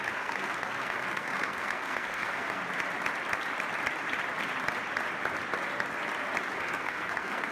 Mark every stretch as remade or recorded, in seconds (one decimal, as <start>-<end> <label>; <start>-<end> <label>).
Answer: 0.0-2.6 remade; 2.6-6.6 recorded; 6.6-7.5 remade